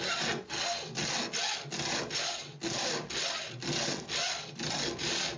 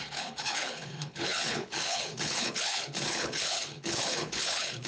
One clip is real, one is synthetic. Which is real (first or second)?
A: first